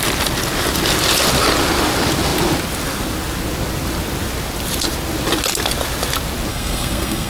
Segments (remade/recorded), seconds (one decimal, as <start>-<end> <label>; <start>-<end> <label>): 0.0-6.5 recorded; 6.5-7.3 remade